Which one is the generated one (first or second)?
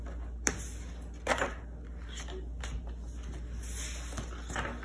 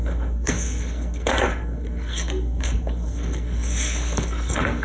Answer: second